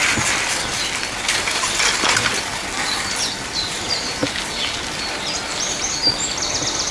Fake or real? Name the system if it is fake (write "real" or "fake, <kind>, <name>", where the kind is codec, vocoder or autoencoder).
real